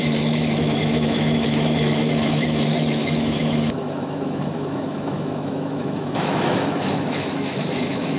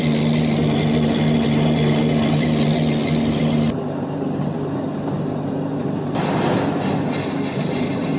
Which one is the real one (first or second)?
second